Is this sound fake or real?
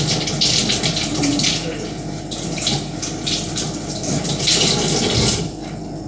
real